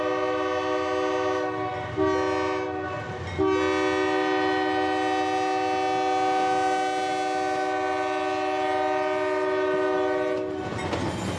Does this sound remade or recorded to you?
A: recorded